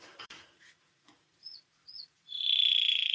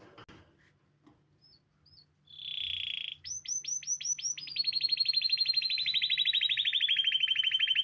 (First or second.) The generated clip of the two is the first